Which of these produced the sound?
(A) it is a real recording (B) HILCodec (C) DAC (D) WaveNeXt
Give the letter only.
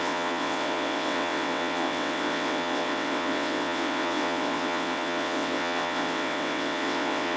D